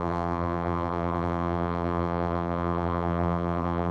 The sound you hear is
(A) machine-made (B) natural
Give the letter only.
A